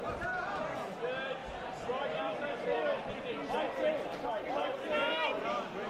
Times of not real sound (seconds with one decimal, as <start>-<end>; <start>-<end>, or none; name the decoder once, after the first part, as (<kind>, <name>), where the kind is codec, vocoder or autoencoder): 1.4-3.1 (vocoder, BigVGAN v2); 5.0-5.9